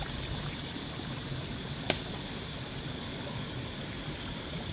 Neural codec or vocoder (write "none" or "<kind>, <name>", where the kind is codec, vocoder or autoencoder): none